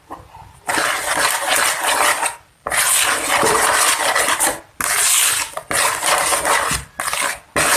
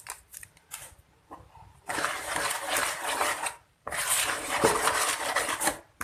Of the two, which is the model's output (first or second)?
second